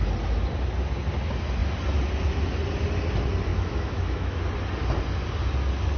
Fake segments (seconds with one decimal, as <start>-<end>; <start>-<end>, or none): 3.5-4.4